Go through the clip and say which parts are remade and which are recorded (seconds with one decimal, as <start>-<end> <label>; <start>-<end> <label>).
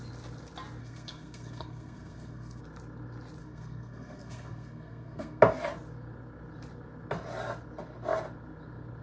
0.0-0.8 recorded; 0.8-2.6 remade; 2.6-3.4 recorded; 3.4-5.4 remade; 5.4-9.0 recorded